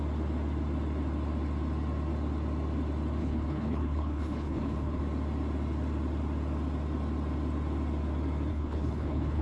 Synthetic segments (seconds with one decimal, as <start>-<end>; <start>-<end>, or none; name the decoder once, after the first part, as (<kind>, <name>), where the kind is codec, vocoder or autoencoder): 3.2-5.0 (codec, HILCodec); 8.5-9.4